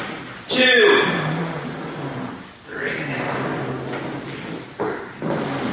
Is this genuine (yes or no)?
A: yes